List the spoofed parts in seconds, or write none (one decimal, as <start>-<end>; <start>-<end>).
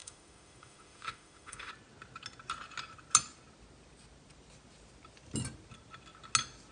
0.0-1.7